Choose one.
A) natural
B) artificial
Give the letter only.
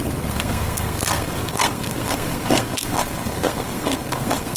B